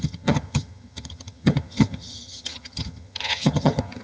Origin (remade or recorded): remade